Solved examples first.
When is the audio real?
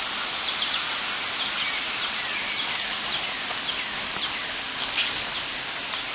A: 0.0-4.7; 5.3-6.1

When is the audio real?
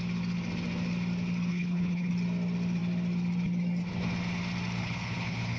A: 0.0-1.5; 2.1-4.8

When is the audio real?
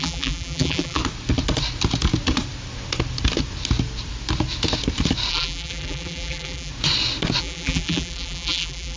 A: 1.0-5.3; 6.7-7.4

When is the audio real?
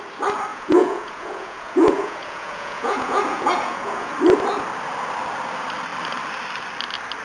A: 0.0-0.5; 4.1-7.2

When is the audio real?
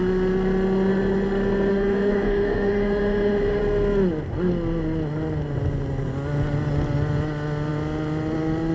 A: 0.0-1.7; 3.6-8.7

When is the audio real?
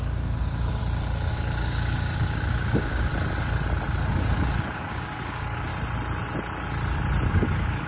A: 0.8-1.3; 3.1-4.6; 5.7-7.3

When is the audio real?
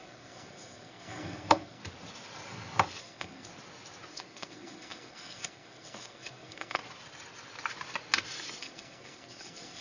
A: 1.8-3.0; 3.5-4.1; 6.8-8.6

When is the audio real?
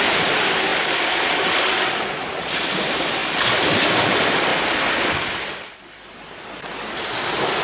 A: 4.5-7.6